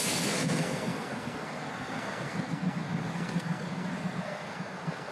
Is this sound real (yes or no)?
no